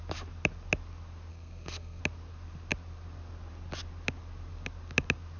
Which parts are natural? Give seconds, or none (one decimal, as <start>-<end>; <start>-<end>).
0.0-1.3; 2.0-5.4